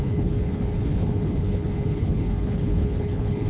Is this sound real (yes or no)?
no